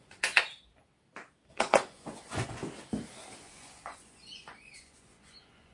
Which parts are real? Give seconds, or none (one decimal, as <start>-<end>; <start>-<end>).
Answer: 0.4-1.5; 2.6-3.4

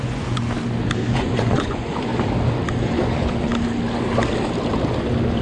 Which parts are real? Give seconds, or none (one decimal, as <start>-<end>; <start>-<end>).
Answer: 0.4-1.1; 2.1-2.8; 3.5-5.4